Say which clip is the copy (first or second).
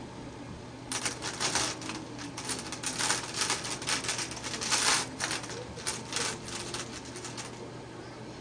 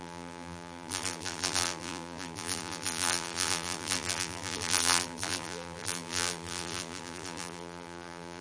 second